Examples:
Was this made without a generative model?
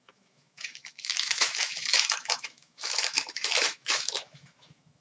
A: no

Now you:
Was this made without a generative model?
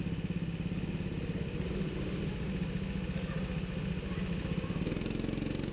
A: yes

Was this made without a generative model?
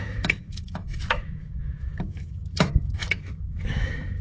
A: no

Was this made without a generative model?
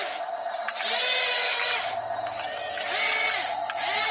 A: yes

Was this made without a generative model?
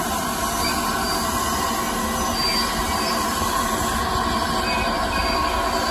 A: yes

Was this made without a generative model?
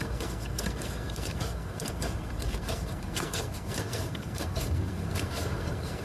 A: no